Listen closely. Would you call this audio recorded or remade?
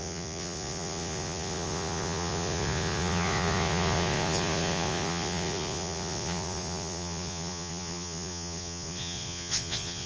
remade